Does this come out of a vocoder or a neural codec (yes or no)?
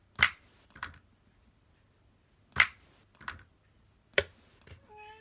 no